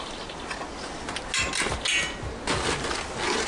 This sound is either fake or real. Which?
real